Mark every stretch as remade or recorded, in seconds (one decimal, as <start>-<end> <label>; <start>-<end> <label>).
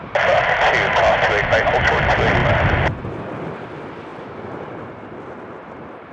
0.0-6.1 recorded